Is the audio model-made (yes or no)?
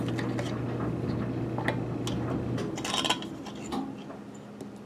no